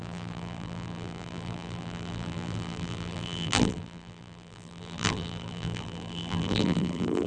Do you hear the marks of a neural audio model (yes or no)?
yes